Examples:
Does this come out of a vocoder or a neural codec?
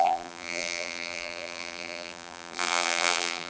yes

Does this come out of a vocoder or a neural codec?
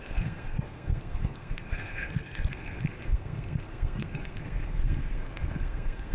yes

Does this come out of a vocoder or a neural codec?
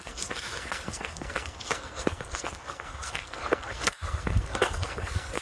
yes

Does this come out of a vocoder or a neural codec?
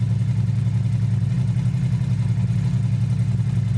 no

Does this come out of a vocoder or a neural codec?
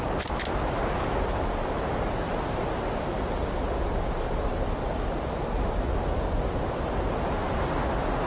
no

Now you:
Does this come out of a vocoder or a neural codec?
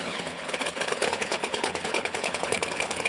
yes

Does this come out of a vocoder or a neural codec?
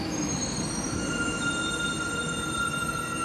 no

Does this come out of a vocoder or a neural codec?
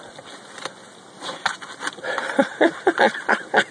no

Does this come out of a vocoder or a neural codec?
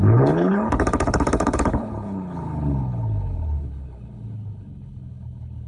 yes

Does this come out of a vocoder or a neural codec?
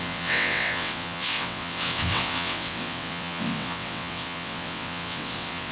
yes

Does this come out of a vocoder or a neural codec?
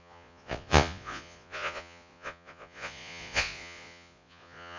yes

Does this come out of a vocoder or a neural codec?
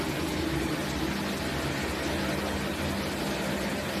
no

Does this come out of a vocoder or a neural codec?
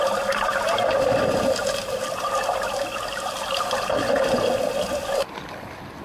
no